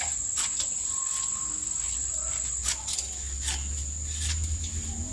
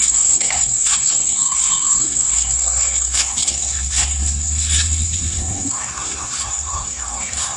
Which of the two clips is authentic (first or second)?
first